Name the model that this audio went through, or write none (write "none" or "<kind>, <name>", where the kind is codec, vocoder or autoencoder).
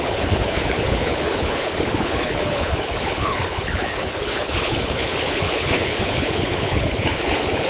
codec, HILCodec